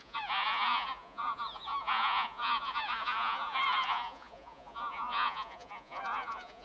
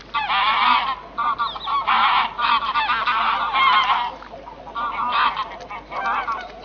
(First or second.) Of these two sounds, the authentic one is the second